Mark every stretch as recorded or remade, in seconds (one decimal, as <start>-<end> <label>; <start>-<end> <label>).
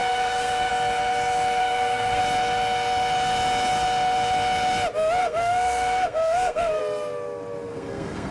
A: 0.0-0.7 remade; 0.7-1.6 recorded; 1.6-2.2 remade; 2.2-5.2 recorded; 5.2-6.8 remade; 6.8-7.7 recorded; 7.7-8.3 remade